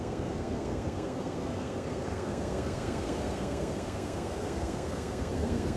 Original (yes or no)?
no